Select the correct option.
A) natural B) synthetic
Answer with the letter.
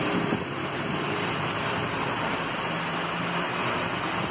A